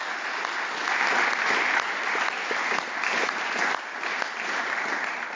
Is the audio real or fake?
real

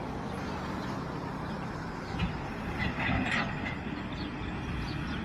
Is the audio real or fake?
real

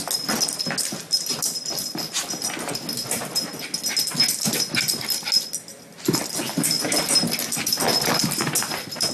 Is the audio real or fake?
real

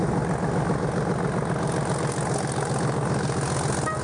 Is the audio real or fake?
real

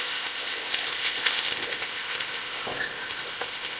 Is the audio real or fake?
fake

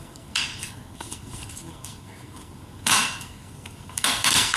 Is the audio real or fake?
fake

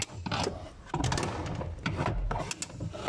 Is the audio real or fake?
real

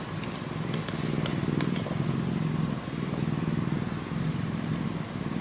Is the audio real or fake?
real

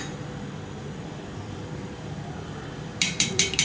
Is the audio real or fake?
fake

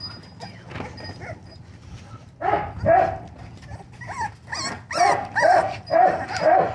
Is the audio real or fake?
real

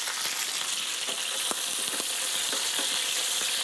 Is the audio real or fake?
real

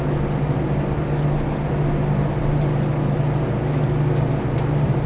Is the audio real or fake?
real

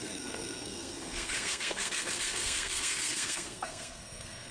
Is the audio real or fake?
fake